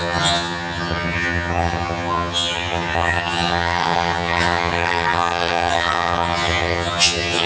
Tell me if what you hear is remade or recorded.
remade